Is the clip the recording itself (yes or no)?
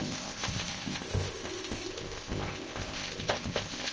no